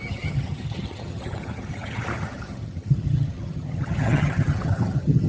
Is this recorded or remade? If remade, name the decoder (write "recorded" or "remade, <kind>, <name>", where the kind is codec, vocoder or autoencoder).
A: remade, vocoder, HiFi-GAN